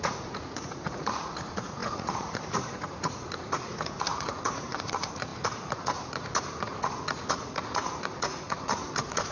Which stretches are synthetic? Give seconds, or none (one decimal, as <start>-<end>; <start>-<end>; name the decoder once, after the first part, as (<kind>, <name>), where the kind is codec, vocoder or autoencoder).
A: 0.0-9.3 (vocoder, Vocos)